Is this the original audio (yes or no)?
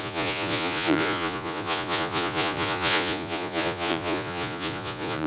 no